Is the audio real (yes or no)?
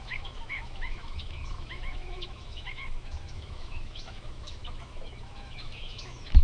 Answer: no